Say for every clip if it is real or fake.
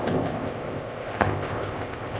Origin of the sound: fake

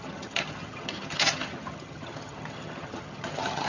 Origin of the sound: fake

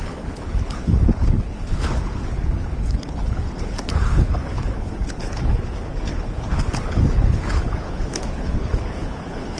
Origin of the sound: fake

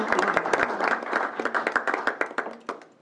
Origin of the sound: real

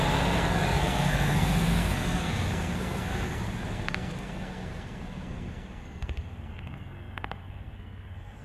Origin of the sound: fake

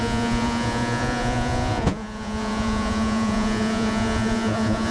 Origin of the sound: fake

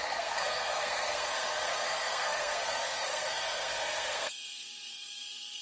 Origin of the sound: fake